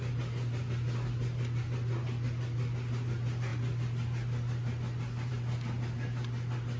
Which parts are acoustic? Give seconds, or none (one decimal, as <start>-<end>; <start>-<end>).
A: 0.0-6.8